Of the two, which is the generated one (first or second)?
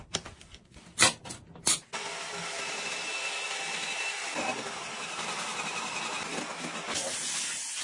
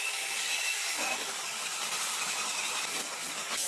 second